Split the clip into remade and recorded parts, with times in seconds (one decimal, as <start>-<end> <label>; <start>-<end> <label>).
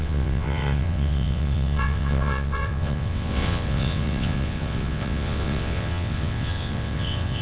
0.0-7.4 remade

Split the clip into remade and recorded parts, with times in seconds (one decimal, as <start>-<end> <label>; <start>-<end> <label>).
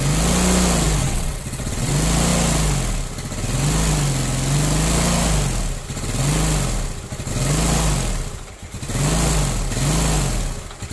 0.0-1.0 recorded; 1.0-1.9 remade; 1.9-10.9 recorded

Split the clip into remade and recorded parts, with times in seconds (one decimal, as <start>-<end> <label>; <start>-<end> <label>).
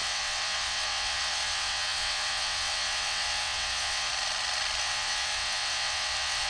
0.0-4.1 remade; 4.1-4.8 recorded; 4.8-6.5 remade